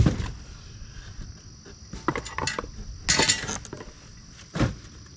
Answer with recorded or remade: recorded